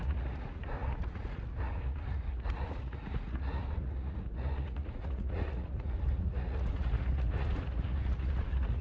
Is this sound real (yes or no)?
no